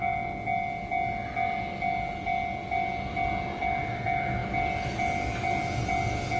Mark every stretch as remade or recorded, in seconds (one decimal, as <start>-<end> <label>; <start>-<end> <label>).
0.0-6.4 recorded